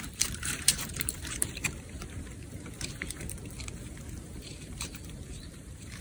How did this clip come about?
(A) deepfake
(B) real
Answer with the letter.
A